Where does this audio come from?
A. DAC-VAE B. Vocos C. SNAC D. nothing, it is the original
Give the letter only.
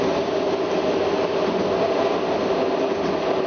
D